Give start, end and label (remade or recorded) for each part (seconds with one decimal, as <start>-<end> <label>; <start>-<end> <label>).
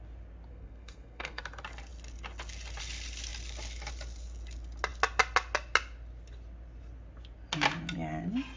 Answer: 0.0-0.5 recorded; 0.5-1.4 remade; 1.4-8.6 recorded